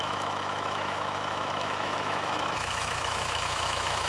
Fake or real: fake